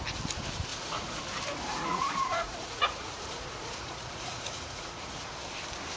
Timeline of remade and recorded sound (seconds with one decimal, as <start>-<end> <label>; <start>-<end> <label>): 0.0-0.7 recorded; 0.7-1.2 remade; 1.2-1.7 recorded; 1.7-5.3 remade; 5.3-6.0 recorded

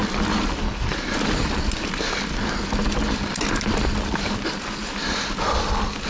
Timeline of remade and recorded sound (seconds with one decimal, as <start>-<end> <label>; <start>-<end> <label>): 0.0-6.1 recorded

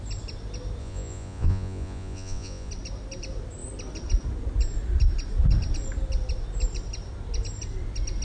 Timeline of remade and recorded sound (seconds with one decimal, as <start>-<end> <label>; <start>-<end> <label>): 0.0-0.8 recorded; 0.8-2.7 remade; 2.7-8.2 recorded